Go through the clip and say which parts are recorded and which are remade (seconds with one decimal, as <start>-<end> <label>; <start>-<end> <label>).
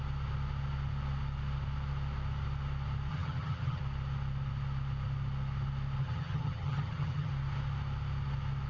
0.0-3.1 recorded; 3.1-3.8 remade; 3.8-6.0 recorded; 6.0-7.3 remade; 7.3-8.7 recorded